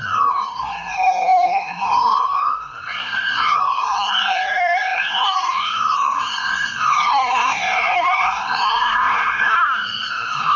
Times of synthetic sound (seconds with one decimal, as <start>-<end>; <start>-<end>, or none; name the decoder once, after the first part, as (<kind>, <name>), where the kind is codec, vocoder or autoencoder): 0.0-10.6 (codec, SNAC)